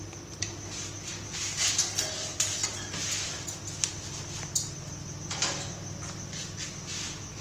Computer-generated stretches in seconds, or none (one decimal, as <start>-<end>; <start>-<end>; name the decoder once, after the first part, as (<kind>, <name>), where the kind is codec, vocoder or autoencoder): none